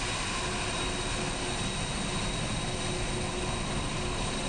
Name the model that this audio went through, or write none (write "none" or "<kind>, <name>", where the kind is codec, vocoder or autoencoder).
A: none